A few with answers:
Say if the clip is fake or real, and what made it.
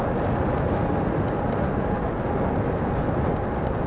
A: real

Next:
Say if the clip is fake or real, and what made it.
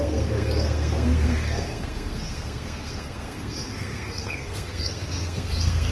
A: fake, codec, SNAC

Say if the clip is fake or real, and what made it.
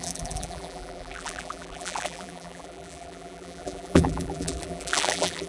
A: fake, vocoder, BigVGAN v2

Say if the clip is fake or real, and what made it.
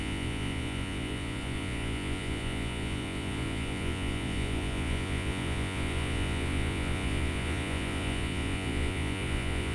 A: fake, vocoder, Vocos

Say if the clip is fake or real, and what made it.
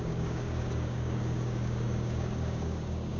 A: fake, codec, DAC